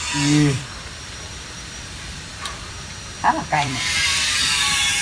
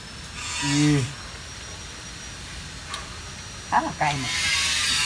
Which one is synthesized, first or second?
first